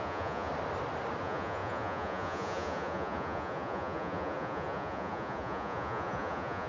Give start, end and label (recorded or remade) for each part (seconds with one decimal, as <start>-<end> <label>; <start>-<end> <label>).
0.0-0.5 remade; 0.5-1.2 recorded; 1.2-6.7 remade